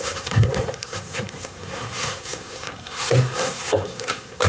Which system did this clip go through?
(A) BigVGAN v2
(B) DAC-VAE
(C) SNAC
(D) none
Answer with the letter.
C